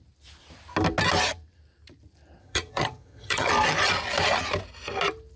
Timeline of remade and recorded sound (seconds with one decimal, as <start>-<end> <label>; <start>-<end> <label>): 0.0-2.4 recorded; 2.4-3.5 remade; 3.5-5.4 recorded